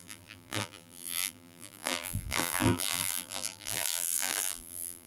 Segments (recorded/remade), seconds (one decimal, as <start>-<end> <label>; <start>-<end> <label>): 0.0-5.1 remade